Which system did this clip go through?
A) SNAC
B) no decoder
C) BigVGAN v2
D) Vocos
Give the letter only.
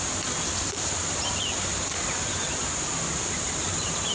B